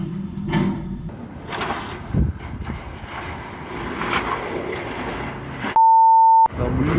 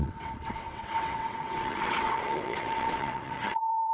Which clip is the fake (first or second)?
second